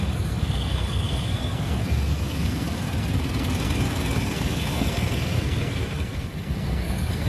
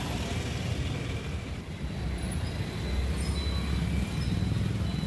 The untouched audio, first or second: second